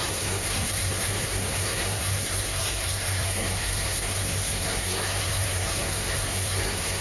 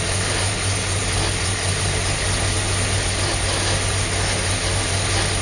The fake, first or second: first